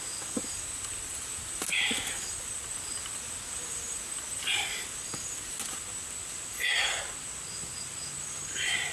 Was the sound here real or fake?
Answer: real